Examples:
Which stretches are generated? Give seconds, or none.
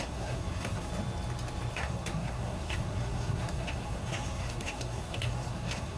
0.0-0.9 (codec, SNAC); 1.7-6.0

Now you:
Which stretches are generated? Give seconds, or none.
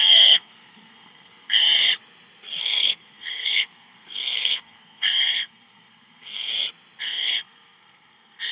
0.0-1.6 (codec, SNAC); 2.6-6.5; 7.0-8.5